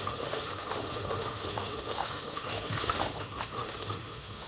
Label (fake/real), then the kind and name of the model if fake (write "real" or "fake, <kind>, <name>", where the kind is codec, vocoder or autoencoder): fake, autoencoder, DAC-VAE